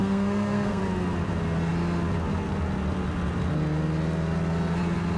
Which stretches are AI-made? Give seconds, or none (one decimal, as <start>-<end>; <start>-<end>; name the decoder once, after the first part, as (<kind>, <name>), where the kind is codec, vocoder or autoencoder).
0.0-0.8 (codec, SNAC)